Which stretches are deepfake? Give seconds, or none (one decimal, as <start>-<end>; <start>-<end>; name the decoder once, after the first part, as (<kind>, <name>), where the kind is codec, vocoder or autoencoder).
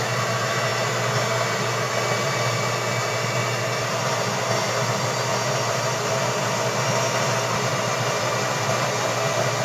none